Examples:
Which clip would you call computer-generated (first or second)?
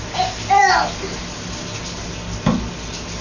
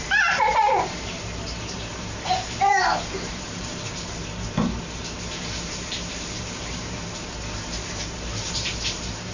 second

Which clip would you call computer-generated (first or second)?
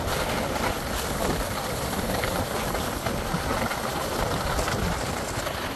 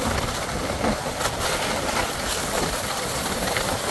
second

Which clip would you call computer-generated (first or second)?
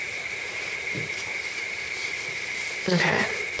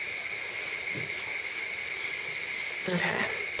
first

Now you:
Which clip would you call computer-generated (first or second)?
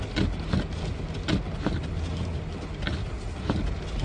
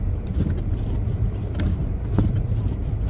second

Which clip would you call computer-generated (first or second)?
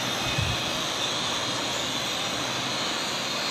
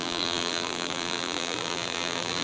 second